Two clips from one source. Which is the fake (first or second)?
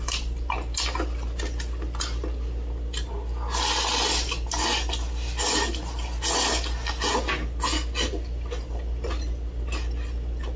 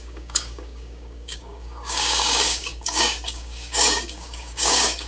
second